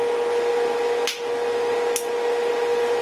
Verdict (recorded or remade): recorded